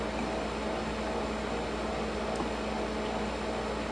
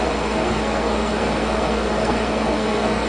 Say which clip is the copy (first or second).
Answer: second